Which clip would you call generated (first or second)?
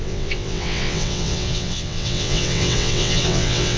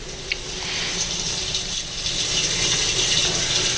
first